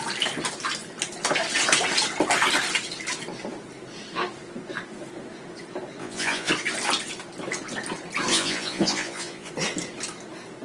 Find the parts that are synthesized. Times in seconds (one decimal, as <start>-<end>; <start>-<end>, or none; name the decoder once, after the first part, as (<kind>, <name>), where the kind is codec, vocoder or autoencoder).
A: 6.0-6.5 (vocoder, Vocos); 8.3-9.5